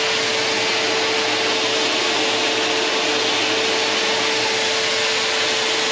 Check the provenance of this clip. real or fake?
real